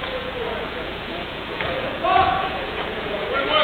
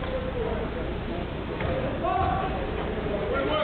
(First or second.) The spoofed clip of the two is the first